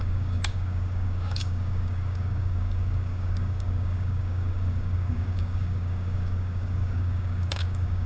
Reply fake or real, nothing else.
fake